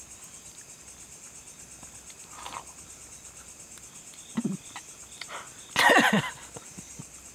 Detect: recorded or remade recorded